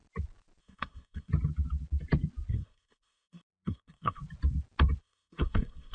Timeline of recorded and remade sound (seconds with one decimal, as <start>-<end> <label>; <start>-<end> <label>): 0.0-0.6 recorded; 0.6-1.3 remade; 1.3-2.5 recorded; 2.5-4.2 remade; 4.2-5.0 recorded; 5.0-5.9 remade